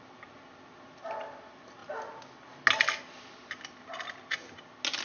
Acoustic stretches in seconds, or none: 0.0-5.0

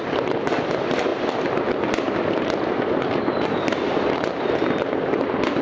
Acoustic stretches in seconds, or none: 0.0-5.6

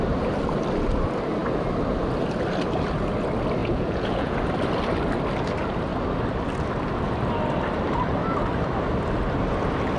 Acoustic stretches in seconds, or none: 0.0-3.6; 4.4-10.0